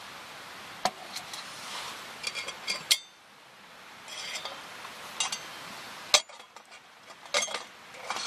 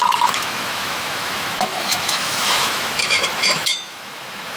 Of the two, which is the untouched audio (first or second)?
first